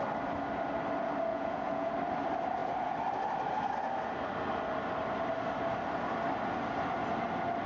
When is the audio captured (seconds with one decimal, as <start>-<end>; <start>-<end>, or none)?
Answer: 0.0-1.3; 1.9-7.7